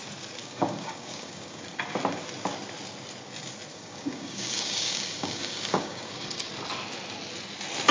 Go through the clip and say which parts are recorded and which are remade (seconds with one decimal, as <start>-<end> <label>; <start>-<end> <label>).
0.0-0.4 recorded; 0.4-1.6 remade; 1.6-3.7 recorded; 3.7-6.5 remade; 6.5-7.9 recorded